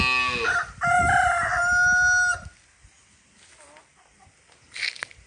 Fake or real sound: real